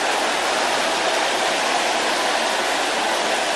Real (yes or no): yes